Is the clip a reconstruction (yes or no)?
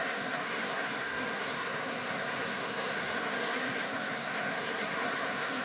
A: yes